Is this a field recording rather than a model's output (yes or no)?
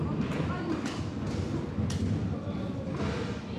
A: yes